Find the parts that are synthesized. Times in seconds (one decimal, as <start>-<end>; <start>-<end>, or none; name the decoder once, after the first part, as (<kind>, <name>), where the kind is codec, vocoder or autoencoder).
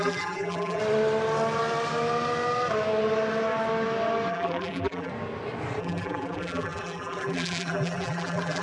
0.0-0.8 (vocoder, BigVGAN v2); 4.3-5.1; 5.8-8.6